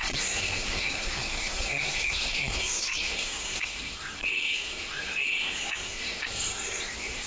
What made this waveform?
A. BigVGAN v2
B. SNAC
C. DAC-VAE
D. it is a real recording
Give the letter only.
B